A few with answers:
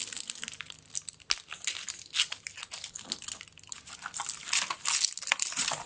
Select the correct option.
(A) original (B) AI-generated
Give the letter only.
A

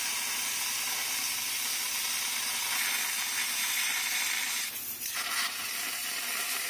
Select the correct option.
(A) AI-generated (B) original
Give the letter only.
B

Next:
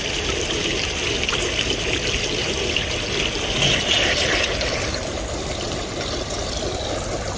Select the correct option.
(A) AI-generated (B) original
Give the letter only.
B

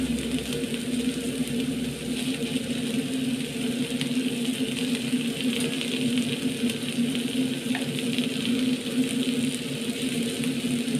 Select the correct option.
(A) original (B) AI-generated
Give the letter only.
A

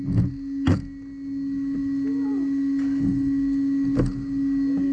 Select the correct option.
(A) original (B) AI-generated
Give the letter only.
A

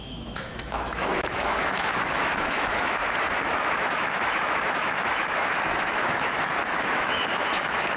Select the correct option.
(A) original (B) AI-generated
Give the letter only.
B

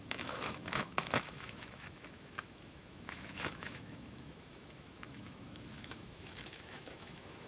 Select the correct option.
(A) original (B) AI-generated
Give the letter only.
B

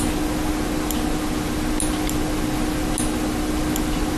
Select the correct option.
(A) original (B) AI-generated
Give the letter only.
A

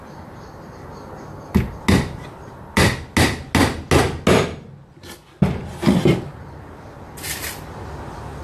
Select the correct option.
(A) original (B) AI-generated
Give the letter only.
A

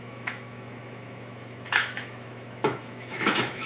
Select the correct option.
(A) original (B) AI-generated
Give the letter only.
B